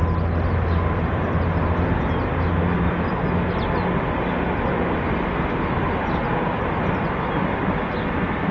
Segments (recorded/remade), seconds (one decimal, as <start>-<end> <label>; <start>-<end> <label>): 0.0-8.5 recorded